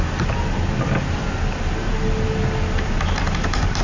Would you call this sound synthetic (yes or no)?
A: no